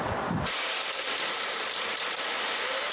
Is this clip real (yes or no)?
yes